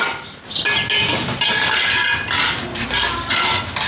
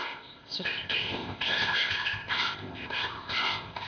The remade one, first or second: second